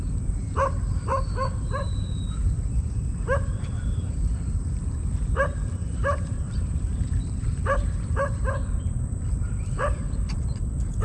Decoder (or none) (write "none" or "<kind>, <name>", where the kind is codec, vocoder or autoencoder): vocoder, BigVGAN v2